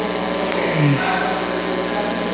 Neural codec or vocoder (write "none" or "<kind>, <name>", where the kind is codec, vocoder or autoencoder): none